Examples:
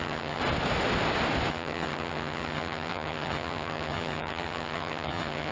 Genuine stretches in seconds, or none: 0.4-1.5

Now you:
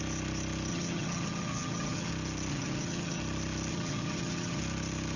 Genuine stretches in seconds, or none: 0.0-0.7; 2.1-2.5; 3.2-3.7; 4.6-5.2

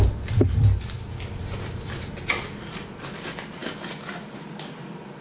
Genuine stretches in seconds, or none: 0.0-5.2